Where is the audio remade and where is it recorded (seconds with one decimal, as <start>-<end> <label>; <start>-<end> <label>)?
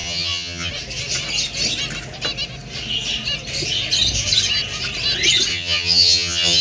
0.0-0.7 remade; 0.7-5.5 recorded; 5.5-6.6 remade